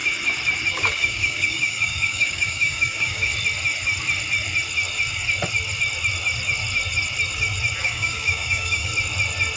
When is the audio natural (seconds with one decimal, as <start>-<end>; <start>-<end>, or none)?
0.0-0.7; 3.3-7.8; 8.9-9.6